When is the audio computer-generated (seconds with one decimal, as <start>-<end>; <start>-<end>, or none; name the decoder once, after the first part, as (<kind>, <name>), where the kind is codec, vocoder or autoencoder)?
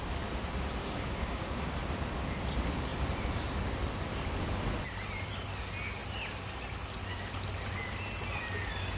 0.8-1.7 (codec, DAC)